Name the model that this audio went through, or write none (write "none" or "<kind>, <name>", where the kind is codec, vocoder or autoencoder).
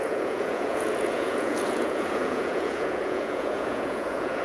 vocoder, Vocos